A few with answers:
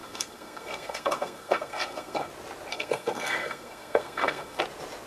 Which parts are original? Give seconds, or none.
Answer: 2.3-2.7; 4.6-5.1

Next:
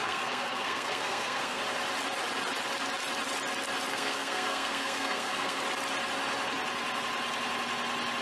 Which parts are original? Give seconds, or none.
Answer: 1.6-3.9; 5.6-8.2

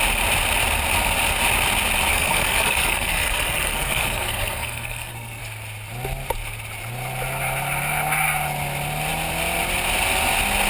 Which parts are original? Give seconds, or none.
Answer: 0.0-2.1; 5.4-10.7

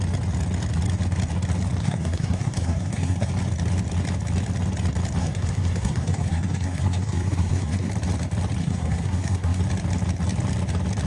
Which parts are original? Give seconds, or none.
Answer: 0.0-1.8; 3.3-5.2; 7.9-8.6; 9.6-11.1

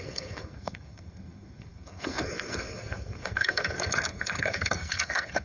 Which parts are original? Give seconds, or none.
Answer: none

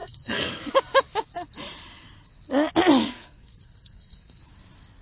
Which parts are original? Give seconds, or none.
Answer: 0.7-3.0; 4.4-5.0